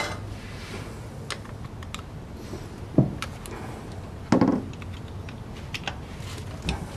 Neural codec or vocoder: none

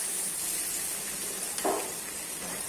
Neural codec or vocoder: none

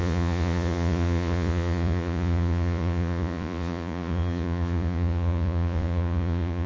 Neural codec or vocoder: vocoder, Vocos